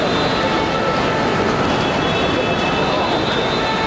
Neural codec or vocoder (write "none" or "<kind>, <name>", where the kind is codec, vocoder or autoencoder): none